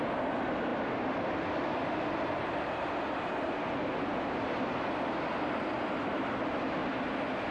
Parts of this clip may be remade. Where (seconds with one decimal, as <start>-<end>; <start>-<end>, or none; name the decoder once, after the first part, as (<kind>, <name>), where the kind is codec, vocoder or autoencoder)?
none